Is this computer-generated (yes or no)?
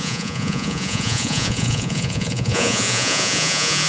yes